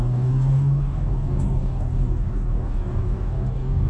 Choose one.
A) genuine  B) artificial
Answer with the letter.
B